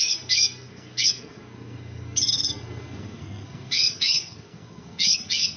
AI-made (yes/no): yes